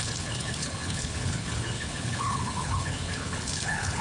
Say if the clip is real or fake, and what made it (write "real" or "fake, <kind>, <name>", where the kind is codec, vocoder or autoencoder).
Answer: fake, codec, HILCodec